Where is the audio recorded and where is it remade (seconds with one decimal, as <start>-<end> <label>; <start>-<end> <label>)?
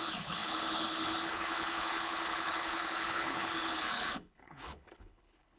0.0-5.6 remade